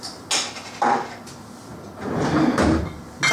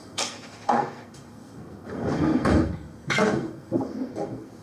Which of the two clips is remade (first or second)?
second